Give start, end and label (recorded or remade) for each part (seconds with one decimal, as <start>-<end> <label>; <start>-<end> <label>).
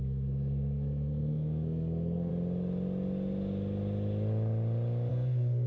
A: 0.0-2.3 remade; 2.3-5.1 recorded; 5.1-5.7 remade